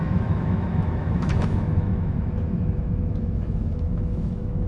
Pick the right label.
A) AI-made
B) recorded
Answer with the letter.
A